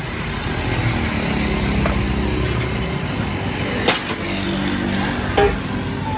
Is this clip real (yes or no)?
yes